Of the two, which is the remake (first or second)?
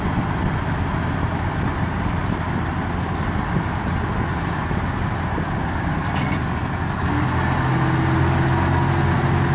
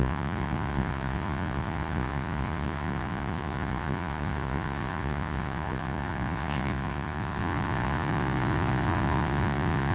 second